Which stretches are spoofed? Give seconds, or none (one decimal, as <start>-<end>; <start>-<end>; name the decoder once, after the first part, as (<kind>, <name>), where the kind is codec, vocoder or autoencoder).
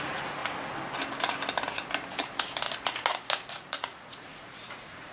0.0-0.4 (vocoder, Vocos); 3.5-5.1